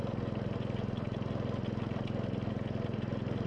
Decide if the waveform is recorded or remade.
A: recorded